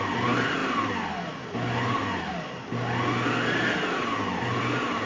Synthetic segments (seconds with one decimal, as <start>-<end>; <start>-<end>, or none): none